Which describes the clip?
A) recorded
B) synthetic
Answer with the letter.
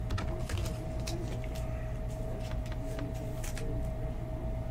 A